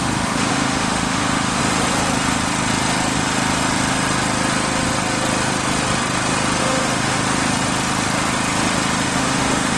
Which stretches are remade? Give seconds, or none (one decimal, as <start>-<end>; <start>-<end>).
0.0-1.6; 6.6-7.2; 9.0-9.8